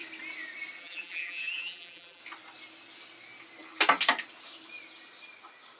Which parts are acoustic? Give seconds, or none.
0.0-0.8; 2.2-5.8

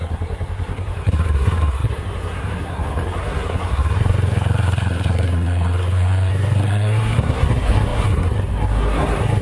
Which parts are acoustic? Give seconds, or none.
none

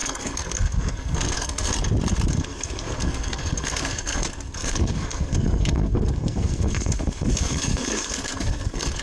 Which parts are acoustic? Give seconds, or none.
1.7-2.3

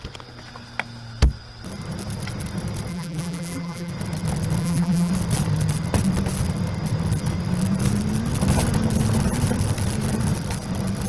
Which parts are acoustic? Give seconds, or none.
0.0-2.9; 3.9-4.6; 5.1-11.1

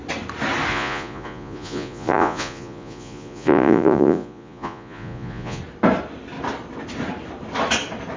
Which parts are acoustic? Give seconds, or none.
0.0-0.7; 5.6-8.2

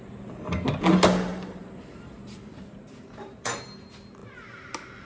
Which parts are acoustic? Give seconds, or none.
0.0-1.3; 3.4-5.0

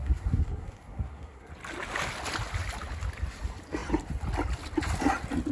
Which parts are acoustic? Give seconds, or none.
1.5-5.5